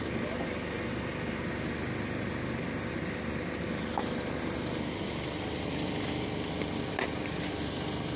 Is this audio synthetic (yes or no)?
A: no